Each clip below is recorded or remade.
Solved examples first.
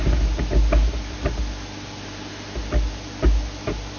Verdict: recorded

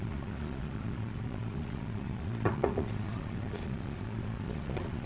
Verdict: remade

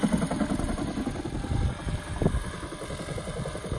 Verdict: recorded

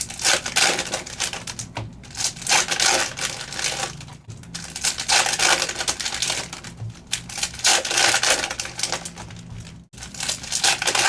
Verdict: recorded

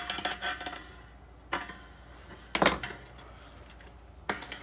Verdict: recorded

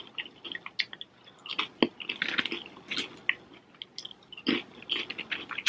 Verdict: recorded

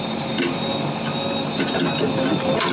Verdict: recorded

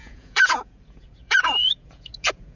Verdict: remade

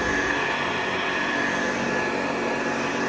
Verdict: recorded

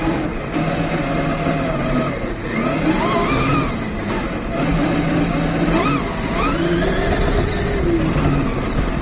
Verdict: recorded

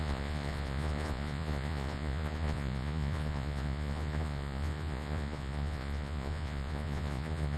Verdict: remade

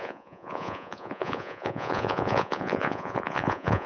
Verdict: remade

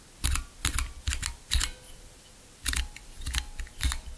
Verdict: recorded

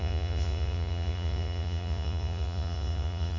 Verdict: remade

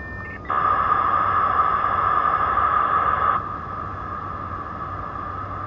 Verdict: recorded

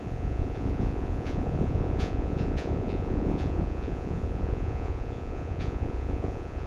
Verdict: remade